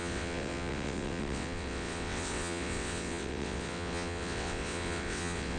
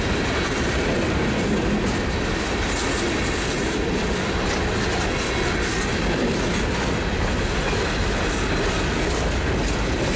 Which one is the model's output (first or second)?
first